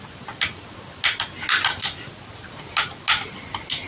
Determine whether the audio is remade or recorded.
recorded